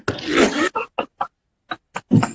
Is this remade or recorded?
recorded